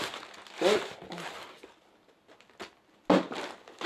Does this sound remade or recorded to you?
recorded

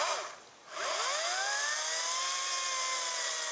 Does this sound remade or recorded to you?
recorded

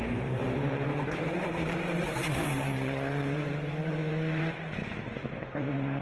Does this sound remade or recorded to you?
remade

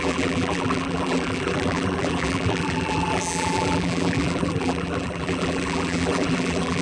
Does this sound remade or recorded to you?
remade